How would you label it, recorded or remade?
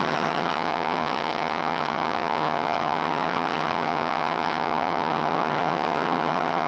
remade